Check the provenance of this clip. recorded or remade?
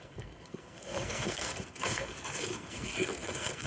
remade